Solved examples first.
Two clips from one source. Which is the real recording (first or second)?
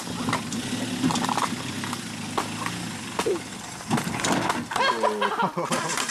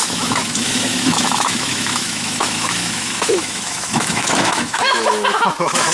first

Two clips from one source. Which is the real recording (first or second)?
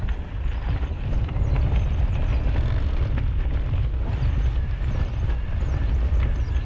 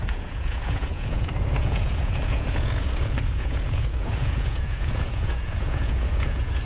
first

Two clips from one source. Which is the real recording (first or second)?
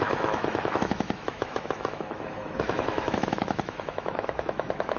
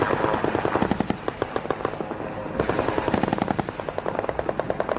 second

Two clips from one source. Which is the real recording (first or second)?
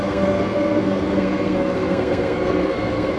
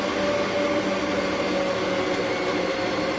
second